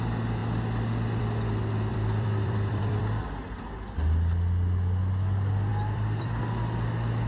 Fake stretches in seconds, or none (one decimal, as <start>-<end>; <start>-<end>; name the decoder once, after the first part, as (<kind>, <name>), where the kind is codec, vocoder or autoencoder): 1.9-3.0 (vocoder, BigVGAN v2); 5.7-6.4